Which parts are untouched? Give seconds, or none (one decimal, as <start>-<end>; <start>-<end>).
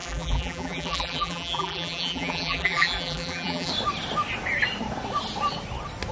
3.7-6.1